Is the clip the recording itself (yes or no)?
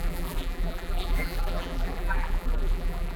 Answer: no